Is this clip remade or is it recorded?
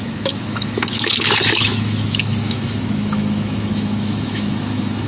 remade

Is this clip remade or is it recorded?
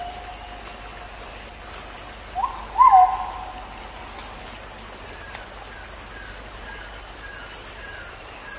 recorded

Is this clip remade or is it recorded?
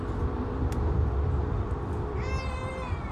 recorded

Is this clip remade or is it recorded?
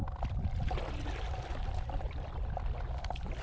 recorded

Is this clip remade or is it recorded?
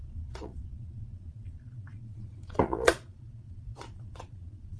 remade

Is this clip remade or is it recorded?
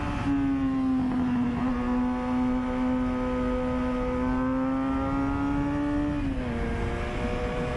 recorded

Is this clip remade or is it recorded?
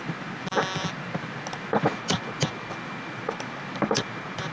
recorded